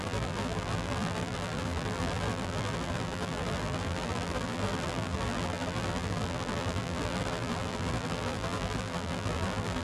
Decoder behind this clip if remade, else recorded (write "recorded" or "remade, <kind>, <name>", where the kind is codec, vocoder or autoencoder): remade, vocoder, BigVGAN v2